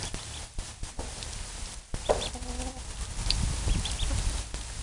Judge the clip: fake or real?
real